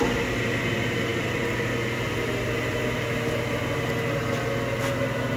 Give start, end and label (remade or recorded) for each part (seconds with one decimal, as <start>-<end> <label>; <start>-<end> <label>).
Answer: 0.0-5.4 recorded